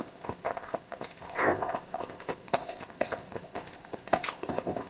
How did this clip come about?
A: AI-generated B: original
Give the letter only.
A